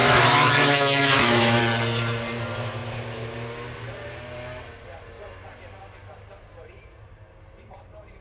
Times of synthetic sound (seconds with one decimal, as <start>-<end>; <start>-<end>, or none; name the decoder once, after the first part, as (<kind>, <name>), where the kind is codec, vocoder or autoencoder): 0.0-1.6 (autoencoder, DAC-VAE)